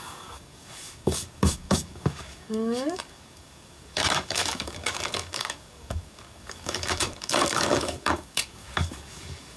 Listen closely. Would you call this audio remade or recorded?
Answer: remade